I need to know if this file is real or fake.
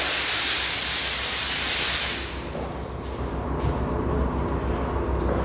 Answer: real